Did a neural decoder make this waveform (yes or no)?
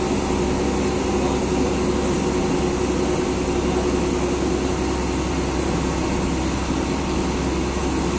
no